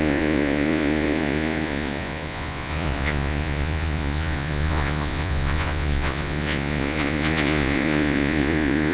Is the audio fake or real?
fake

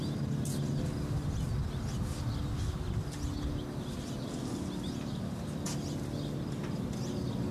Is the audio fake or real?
real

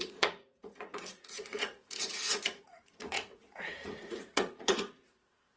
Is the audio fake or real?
fake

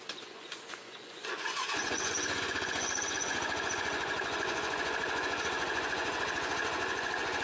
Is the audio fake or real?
fake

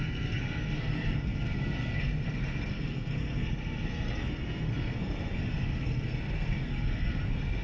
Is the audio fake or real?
fake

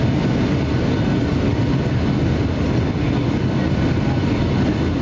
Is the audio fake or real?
real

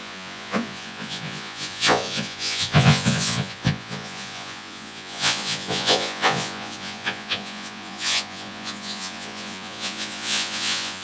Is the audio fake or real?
fake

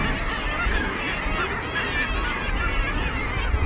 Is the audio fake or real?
real